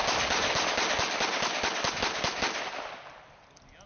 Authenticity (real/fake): real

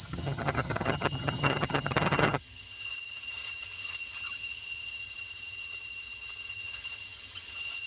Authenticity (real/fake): fake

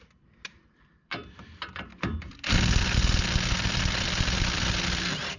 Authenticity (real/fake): real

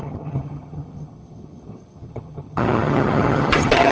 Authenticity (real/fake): fake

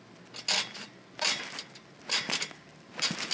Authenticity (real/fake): real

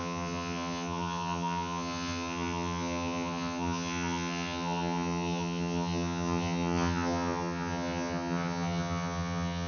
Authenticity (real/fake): fake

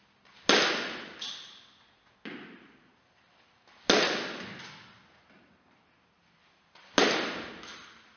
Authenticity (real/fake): real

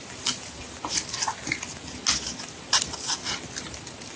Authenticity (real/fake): real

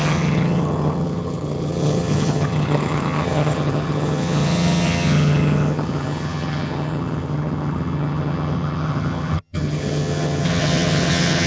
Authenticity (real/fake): fake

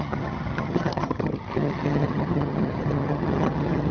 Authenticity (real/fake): fake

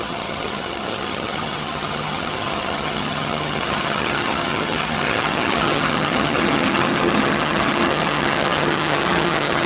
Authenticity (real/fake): fake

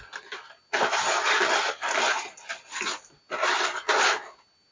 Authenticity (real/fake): real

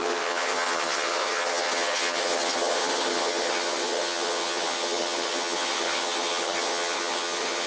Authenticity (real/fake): fake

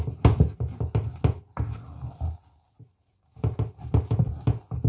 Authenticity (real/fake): real